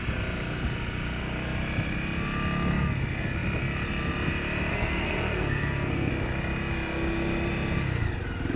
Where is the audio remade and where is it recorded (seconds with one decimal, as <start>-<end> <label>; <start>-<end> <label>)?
0.0-4.7 recorded; 4.7-6.1 remade; 6.1-8.6 recorded